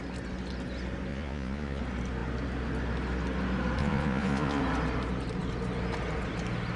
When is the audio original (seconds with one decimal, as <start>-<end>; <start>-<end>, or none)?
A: 0.0-1.1; 1.8-3.8; 4.6-6.8